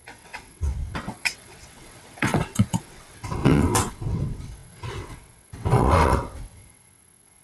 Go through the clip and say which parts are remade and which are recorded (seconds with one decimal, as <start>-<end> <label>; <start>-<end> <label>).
0.0-7.4 remade